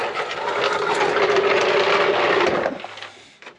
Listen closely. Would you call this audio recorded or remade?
recorded